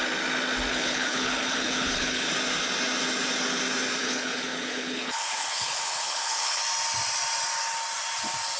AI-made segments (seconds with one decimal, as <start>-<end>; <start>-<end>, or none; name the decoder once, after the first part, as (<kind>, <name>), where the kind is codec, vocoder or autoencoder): 0.7-2.3 (codec, HILCodec); 4.0-6.6